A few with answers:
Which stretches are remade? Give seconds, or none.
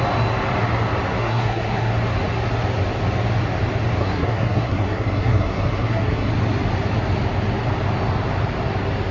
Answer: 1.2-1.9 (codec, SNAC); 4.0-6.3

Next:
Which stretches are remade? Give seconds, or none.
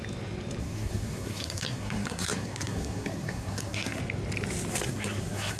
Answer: 0.6-4.0 (codec, SNAC); 4.7-5.6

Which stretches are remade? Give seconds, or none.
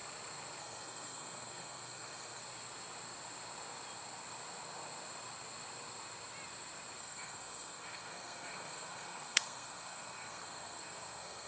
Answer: 0.6-2.4 (codec, SNAC); 7.0-11.5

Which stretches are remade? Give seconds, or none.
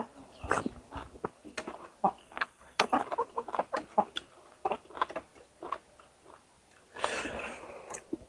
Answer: 2.2-2.9 (codec, SNAC)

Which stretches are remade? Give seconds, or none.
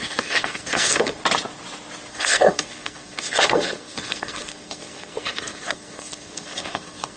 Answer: 0.0-1.2 (codec, SNAC); 2.1-7.2